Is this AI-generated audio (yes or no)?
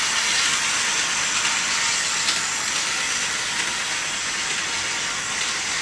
no